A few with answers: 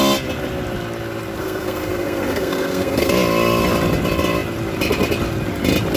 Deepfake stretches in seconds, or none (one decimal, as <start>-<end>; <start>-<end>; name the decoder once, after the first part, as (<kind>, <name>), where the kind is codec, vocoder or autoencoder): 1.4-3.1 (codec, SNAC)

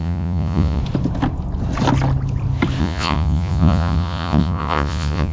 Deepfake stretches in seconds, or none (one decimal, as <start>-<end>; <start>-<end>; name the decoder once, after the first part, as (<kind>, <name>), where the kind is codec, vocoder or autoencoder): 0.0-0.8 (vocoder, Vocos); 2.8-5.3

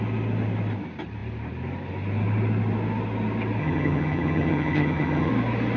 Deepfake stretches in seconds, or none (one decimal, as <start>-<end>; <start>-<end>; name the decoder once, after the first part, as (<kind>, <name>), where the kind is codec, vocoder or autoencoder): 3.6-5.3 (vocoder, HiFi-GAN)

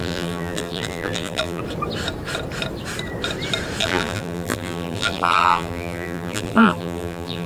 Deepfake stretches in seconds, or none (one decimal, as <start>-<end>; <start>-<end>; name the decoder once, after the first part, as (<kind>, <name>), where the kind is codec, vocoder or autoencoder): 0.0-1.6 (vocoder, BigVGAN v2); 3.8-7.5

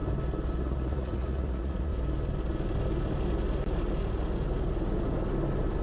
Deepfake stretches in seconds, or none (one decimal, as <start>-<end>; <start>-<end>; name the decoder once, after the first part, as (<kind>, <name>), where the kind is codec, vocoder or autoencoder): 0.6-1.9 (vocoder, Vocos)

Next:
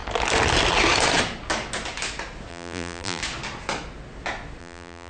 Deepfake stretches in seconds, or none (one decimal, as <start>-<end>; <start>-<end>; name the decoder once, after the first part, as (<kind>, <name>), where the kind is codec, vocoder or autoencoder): 2.5-3.2 (vocoder, BigVGAN v2); 4.6-5.1

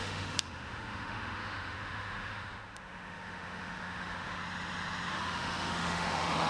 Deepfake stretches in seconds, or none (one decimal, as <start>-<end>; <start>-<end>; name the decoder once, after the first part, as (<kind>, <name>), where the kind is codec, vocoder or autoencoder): 0.0-4.4 (autoencoder, DAC-VAE); 5.1-6.5

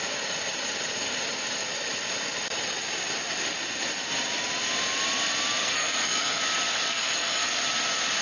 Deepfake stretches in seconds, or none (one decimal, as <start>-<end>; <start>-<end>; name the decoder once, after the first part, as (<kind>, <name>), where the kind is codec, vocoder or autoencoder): 5.6-6.4 (codec, SNAC); 6.9-7.5